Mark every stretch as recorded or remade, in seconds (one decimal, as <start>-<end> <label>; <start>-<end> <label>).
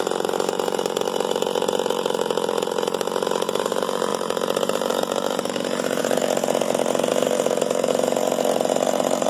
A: 0.0-9.3 remade